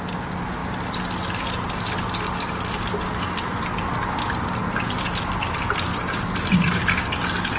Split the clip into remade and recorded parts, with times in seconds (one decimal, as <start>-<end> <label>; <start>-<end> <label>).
0.0-5.9 recorded; 5.9-7.0 remade; 7.0-7.6 recorded